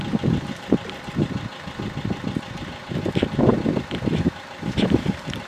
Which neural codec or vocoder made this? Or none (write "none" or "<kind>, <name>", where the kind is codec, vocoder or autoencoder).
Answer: vocoder, BigVGAN v2